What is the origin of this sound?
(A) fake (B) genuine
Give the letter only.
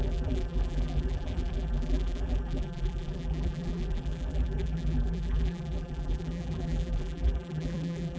A